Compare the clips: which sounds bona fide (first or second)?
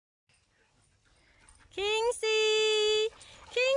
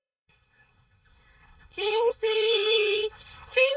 first